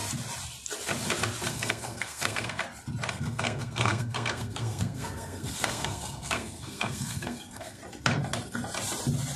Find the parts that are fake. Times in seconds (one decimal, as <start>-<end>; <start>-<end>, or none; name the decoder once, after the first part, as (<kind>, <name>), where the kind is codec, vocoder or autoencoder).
1.5-2.6 (codec, SNAC); 3.1-7.8